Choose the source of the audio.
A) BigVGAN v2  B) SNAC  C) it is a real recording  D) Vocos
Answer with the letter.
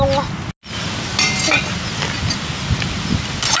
C